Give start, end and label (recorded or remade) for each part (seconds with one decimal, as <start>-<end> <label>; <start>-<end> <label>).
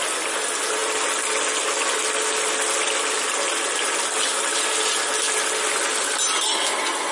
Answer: 0.0-7.1 recorded